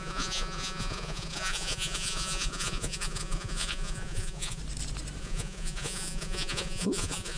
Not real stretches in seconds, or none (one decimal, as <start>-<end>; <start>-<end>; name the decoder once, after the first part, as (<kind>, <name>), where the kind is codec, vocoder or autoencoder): 0.0-4.6 (vocoder, Vocos); 5.2-7.4